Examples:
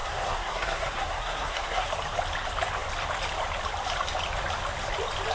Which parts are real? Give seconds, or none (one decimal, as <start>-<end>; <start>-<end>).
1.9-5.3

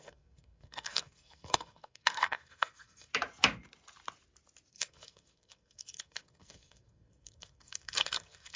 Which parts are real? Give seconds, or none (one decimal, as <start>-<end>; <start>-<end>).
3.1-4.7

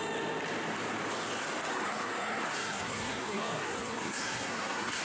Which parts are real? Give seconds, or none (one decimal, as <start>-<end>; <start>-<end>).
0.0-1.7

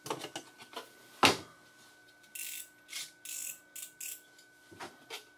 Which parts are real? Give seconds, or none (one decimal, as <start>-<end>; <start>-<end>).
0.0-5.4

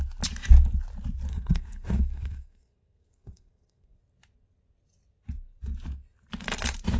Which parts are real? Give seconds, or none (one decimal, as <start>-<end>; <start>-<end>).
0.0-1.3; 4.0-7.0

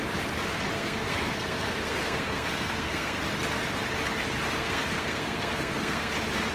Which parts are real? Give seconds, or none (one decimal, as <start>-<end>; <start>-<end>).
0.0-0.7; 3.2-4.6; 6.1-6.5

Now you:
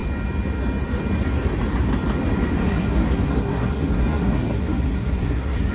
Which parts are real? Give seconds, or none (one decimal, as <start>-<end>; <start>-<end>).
0.0-2.6

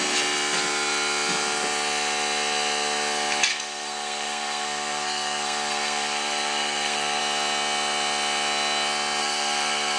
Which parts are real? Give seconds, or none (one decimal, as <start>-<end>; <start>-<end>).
0.0-3.5; 7.2-9.2